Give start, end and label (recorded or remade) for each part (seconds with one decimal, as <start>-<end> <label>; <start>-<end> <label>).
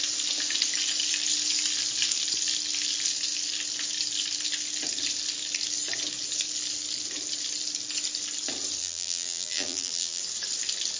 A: 0.0-8.8 recorded; 8.8-10.2 remade; 10.2-11.0 recorded